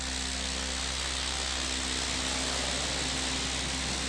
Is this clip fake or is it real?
real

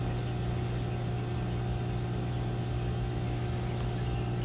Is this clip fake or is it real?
real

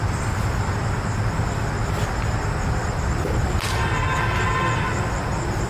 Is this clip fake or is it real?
fake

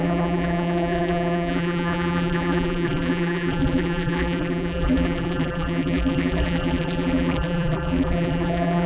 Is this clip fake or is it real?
fake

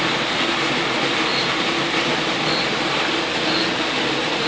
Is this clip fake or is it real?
real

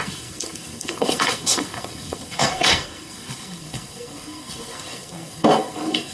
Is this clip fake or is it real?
fake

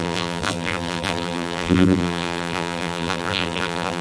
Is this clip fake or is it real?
fake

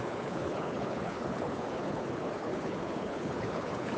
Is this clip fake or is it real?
fake